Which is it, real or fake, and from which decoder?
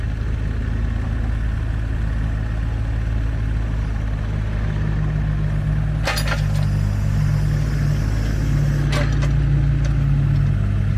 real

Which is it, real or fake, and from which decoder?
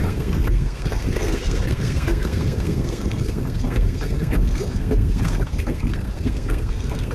fake, codec, SNAC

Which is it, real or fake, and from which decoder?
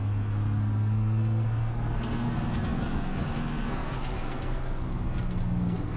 fake, codec, SNAC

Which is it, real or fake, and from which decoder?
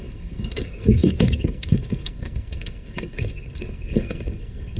fake, codec, SNAC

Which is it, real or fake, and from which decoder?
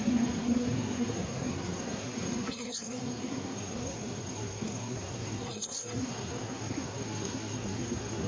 fake, codec, SNAC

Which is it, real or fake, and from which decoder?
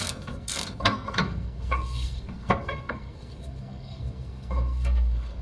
fake, codec, SNAC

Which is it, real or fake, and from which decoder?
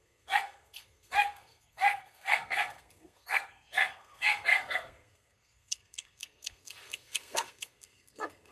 fake, codec, SNAC